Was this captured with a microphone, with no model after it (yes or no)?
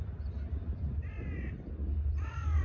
yes